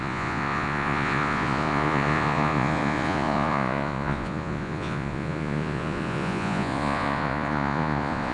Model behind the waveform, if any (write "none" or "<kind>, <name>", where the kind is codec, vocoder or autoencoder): vocoder, Vocos